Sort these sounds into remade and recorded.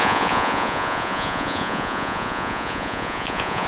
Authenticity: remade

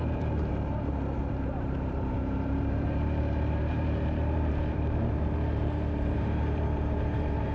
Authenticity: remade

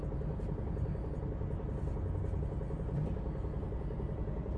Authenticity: recorded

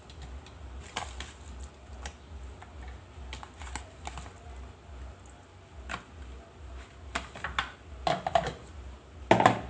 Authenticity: recorded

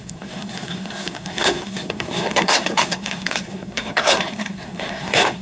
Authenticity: remade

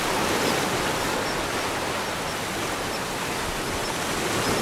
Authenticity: recorded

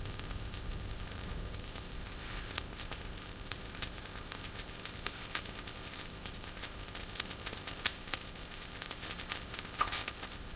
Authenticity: remade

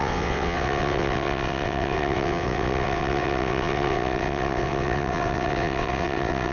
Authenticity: remade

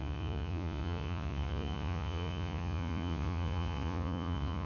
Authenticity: remade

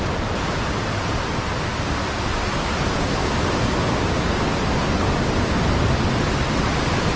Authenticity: recorded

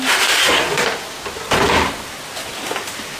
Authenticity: recorded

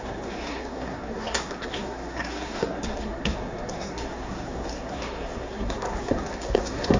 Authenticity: remade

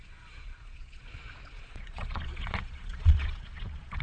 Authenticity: remade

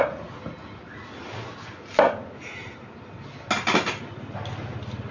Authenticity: recorded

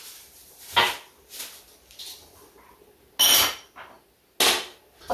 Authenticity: recorded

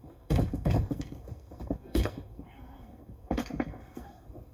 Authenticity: remade